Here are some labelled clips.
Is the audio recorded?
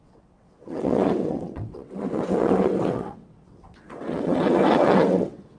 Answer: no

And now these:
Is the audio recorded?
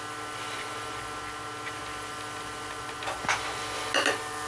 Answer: yes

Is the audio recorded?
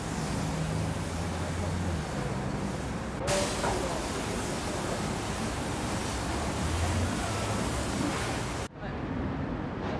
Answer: yes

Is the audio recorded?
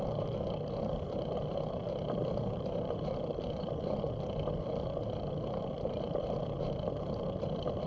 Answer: yes